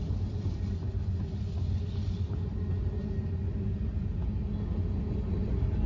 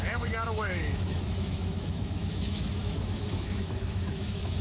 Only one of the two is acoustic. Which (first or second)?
first